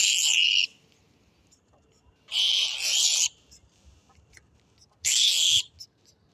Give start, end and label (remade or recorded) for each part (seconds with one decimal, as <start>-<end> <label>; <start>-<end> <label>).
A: 0.0-6.3 recorded